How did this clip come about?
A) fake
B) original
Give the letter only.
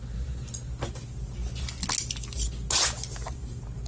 B